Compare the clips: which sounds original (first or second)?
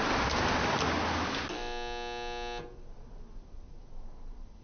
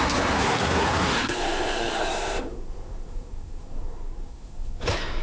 first